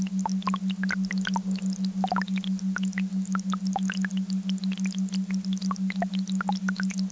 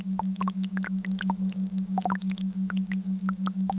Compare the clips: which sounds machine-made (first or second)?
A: second